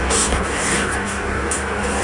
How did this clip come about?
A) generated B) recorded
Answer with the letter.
A